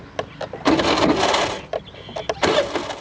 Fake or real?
real